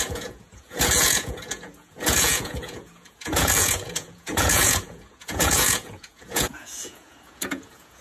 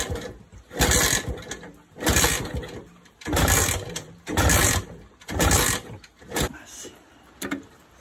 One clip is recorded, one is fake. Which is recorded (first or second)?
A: second